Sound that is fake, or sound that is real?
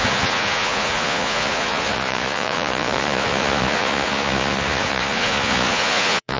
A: fake